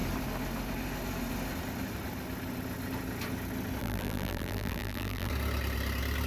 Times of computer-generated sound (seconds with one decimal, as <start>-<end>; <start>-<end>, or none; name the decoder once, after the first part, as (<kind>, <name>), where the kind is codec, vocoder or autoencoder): 3.8-5.3 (vocoder, BigVGAN v2)

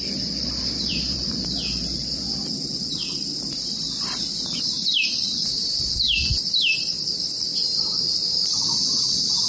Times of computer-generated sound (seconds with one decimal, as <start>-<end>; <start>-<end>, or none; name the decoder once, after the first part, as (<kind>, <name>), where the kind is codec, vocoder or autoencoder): 0.0-9.5 (vocoder, BigVGAN v2)